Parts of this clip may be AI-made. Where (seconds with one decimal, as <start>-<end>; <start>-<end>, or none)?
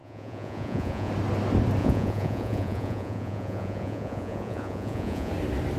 0.0-1.1; 1.8-5.3